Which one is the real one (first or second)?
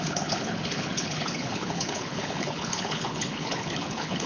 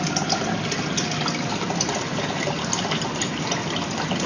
second